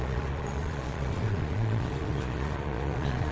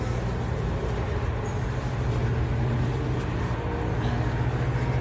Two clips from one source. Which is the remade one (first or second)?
first